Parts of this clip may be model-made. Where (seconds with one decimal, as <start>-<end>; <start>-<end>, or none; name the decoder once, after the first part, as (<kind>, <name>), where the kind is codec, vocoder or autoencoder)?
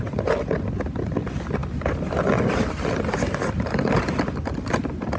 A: none